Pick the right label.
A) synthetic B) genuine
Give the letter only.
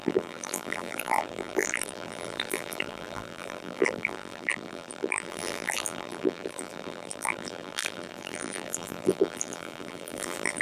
A